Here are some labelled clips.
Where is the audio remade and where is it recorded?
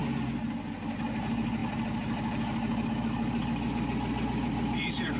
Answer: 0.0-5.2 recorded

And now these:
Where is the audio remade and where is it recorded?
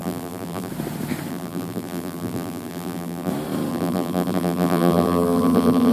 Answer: 0.0-0.7 remade; 0.7-1.3 recorded; 1.3-3.3 remade; 3.3-3.7 recorded; 3.7-5.9 remade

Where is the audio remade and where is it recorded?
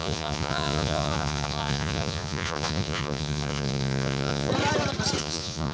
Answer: 0.0-4.5 remade; 4.5-5.2 recorded; 5.2-5.7 remade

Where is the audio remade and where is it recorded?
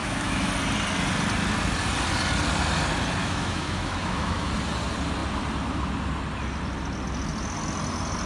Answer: 0.0-0.5 remade; 0.5-3.2 recorded; 3.2-4.5 remade; 4.5-8.3 recorded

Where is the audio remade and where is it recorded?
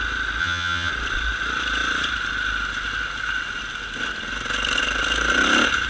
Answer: 0.0-0.4 recorded; 0.4-0.9 remade; 0.9-5.9 recorded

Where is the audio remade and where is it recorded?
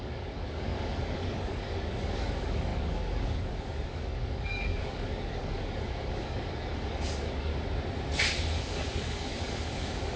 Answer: 0.0-7.5 remade; 7.5-8.6 recorded; 8.6-10.2 remade